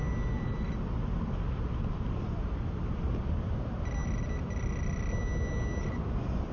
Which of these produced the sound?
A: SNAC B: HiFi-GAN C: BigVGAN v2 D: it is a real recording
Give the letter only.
D